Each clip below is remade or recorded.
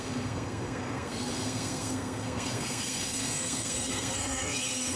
remade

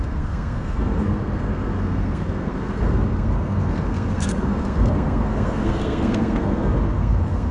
remade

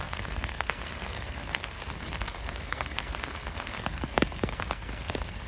remade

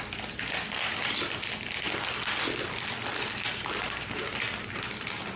recorded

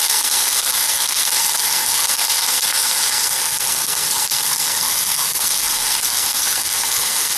remade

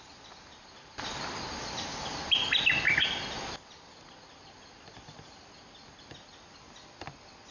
recorded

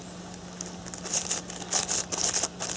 recorded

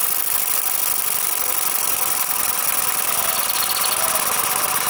recorded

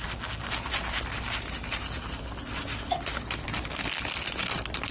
recorded